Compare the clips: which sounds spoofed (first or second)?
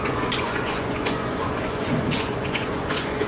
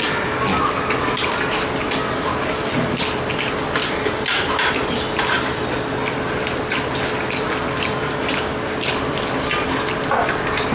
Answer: first